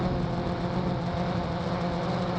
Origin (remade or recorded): recorded